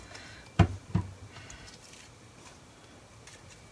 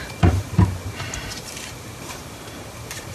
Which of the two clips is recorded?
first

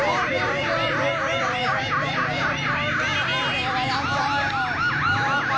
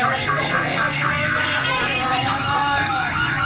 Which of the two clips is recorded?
first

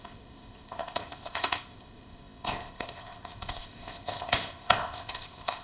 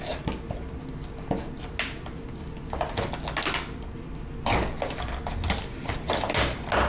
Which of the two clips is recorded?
second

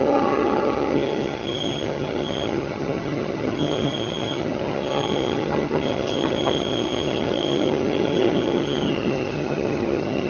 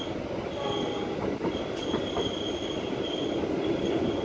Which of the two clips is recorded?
second